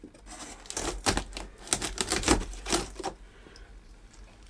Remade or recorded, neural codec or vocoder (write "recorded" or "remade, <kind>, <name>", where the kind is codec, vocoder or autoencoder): recorded